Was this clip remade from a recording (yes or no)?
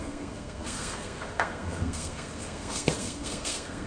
yes